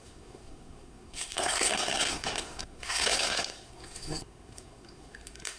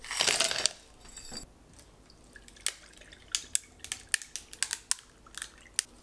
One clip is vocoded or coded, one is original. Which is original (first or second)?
second